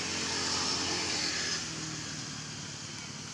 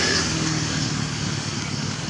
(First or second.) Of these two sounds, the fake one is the second